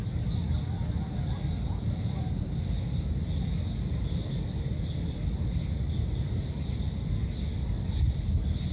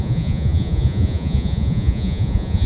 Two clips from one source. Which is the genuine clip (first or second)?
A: first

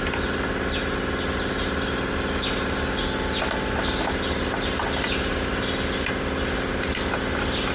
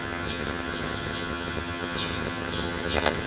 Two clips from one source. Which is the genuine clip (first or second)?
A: first